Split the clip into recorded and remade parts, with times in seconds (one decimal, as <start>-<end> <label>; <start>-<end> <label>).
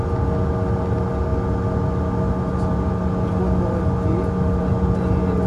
0.0-5.5 recorded